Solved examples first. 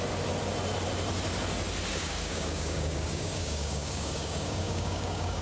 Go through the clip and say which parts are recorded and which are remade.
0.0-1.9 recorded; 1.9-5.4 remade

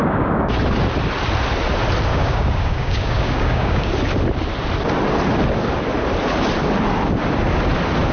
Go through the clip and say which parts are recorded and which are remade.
0.0-0.5 remade; 0.5-2.1 recorded; 2.1-3.9 remade; 3.9-8.1 recorded

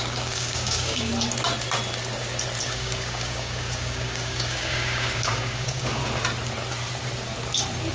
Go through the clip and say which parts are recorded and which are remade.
0.0-1.1 remade; 1.1-2.6 recorded; 2.6-6.0 remade; 6.0-7.9 recorded

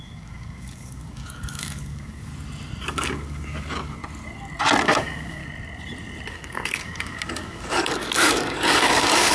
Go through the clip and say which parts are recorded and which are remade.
0.0-2.3 remade; 2.3-2.8 recorded; 2.8-4.0 remade; 4.0-4.8 recorded; 4.8-5.4 remade; 5.4-6.3 recorded; 6.3-9.3 remade

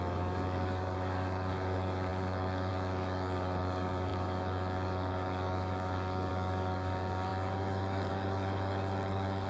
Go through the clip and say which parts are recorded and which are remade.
0.0-9.5 remade

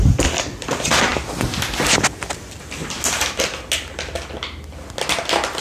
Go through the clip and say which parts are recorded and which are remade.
0.0-5.6 recorded

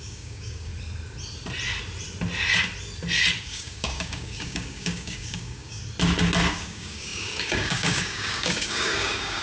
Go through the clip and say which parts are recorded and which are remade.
0.0-0.7 remade; 0.7-3.4 recorded; 3.4-5.8 remade; 5.8-6.5 recorded; 6.5-9.4 remade

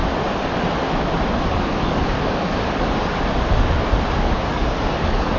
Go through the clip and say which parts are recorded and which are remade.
0.0-1.5 recorded; 1.5-3.2 remade; 3.2-4.5 recorded; 4.5-5.4 remade